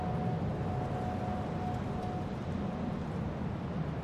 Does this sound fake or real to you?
real